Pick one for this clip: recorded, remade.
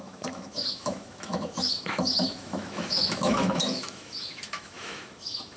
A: remade